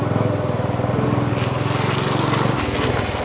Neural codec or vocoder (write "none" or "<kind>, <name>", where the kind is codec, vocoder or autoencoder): none